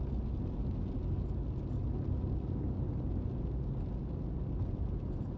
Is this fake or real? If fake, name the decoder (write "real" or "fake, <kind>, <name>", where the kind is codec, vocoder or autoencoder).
real